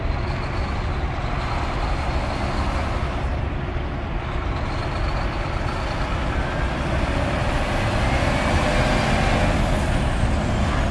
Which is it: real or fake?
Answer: real